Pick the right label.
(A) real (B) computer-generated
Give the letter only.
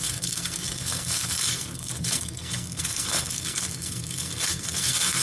B